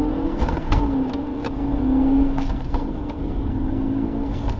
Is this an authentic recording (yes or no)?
no